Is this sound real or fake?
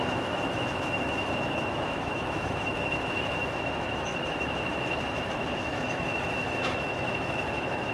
fake